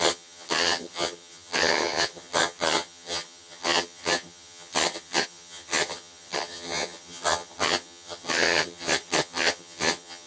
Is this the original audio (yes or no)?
no